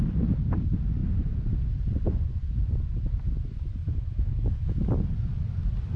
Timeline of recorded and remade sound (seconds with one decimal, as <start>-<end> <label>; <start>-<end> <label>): 0.0-3.8 recorded; 3.8-4.8 remade; 4.8-6.0 recorded